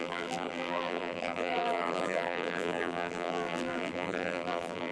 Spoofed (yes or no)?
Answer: yes